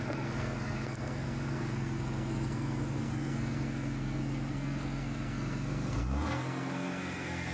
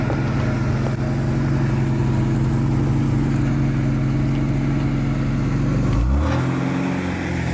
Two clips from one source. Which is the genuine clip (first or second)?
second